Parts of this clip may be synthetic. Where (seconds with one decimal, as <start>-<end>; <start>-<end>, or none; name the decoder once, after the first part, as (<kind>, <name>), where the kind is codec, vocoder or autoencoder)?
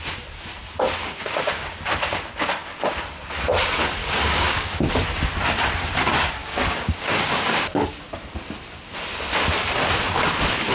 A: 1.0-1.8 (codec, DAC); 4.0-4.9; 6.4-7.6